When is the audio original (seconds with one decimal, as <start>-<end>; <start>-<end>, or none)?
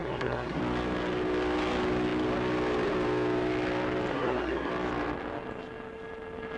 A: 0.6-4.1; 4.7-6.6